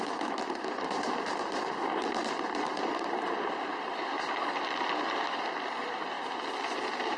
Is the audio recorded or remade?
remade